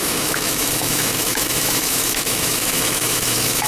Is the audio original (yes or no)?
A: no